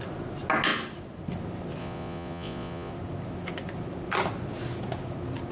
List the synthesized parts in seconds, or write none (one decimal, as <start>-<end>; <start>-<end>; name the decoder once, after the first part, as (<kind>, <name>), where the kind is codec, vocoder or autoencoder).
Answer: 1.8-2.9 (vocoder, Vocos)